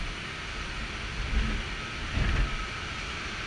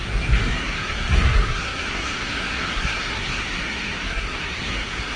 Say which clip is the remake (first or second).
second